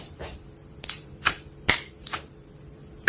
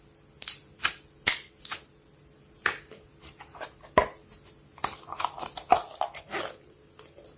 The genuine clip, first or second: second